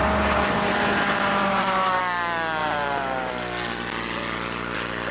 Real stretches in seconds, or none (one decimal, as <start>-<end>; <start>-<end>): 2.0-2.6; 3.3-5.1